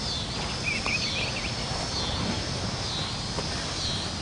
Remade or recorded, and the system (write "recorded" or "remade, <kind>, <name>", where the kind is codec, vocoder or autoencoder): recorded